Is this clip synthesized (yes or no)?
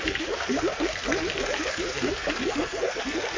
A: yes